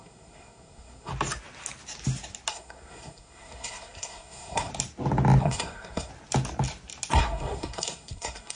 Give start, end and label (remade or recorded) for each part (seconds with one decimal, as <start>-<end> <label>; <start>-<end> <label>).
0.0-1.1 remade; 1.1-2.5 recorded; 2.5-4.7 remade; 4.7-5.4 recorded; 5.4-6.1 remade; 6.1-7.1 recorded; 7.1-8.6 remade